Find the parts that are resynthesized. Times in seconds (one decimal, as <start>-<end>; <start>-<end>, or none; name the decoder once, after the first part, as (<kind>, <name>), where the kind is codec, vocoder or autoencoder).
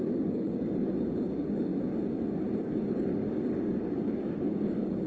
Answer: 0.0-1.7 (codec, DAC); 2.6-5.1